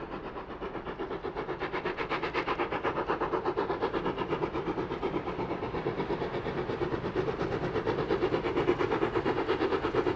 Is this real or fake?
real